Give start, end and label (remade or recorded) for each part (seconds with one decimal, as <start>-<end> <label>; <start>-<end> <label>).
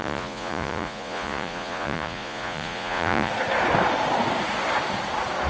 0.0-3.3 remade; 3.3-5.5 recorded